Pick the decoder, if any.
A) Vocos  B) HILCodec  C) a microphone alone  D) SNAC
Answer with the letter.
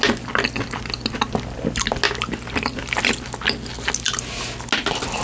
C